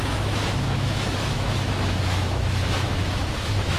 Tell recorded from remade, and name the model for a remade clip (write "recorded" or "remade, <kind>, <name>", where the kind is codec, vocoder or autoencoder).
remade, autoencoder, DAC-VAE